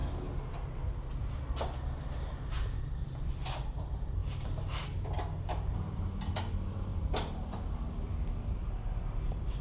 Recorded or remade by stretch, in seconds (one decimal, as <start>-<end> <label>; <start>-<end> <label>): 0.0-2.0 recorded; 2.0-4.2 remade; 4.2-5.7 recorded; 5.7-9.6 remade